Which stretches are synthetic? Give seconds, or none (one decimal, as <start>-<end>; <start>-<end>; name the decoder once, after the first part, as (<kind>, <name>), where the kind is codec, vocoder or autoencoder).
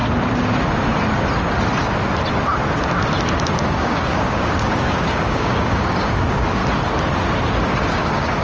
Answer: 3.4-6.6 (codec, DAC); 7.9-8.4